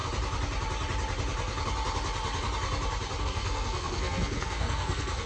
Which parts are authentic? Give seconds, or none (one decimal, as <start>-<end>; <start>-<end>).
0.0-3.2